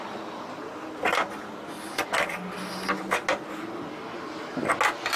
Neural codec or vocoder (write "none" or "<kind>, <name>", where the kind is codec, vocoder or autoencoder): none